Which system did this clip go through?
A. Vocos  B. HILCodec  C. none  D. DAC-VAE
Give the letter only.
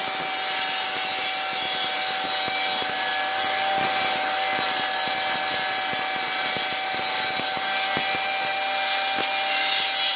C